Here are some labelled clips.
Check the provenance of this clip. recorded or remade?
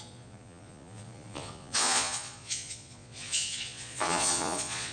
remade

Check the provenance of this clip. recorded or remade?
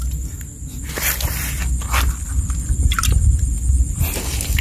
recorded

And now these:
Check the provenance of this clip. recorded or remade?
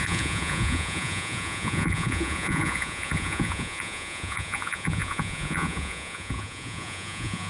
remade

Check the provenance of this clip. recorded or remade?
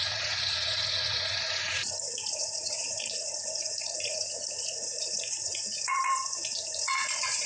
remade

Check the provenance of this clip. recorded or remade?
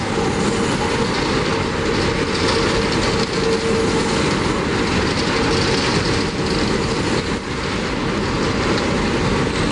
recorded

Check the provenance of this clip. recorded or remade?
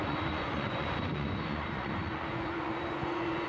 remade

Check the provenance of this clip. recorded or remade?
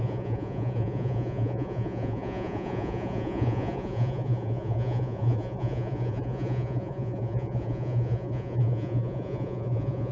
remade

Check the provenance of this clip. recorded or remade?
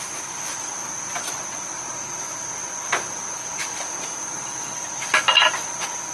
recorded